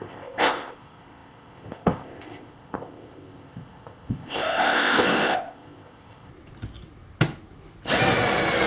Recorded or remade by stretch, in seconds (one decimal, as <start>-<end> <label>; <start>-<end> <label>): 0.0-6.3 remade; 6.3-8.7 recorded